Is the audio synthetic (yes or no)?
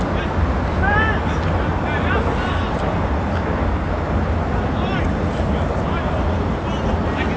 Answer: no